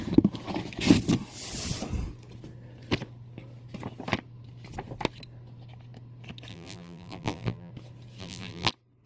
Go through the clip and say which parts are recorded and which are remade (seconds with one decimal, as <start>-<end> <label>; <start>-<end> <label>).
0.0-6.5 recorded; 6.5-7.7 remade; 7.7-8.2 recorded; 8.2-8.7 remade; 8.7-9.1 recorded